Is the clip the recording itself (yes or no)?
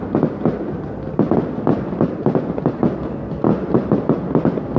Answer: yes